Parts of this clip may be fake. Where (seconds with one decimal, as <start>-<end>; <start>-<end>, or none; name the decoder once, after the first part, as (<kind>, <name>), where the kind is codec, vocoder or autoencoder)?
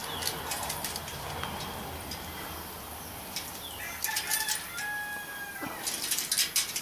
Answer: none